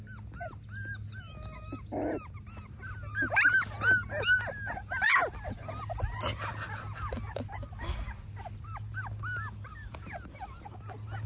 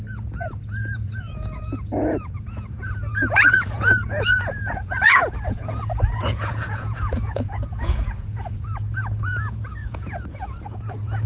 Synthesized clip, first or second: second